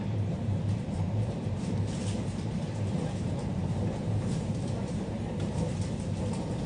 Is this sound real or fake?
fake